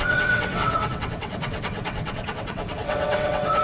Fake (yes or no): yes